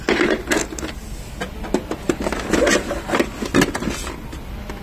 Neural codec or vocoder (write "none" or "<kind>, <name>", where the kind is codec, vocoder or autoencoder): none